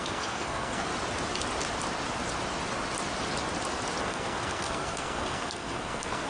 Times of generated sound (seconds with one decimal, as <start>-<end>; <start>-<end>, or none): 0.0-0.9; 4.0-6.3